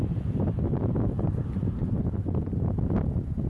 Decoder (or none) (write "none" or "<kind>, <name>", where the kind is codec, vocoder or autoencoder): none